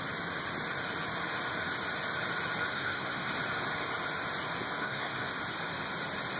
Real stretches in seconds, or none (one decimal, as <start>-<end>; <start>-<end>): 0.0-2.7; 3.3-4.8; 5.3-6.4